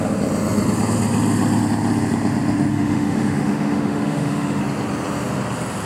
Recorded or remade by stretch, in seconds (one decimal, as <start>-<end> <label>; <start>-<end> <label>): 0.0-2.7 recorded; 2.7-4.6 remade; 4.6-5.9 recorded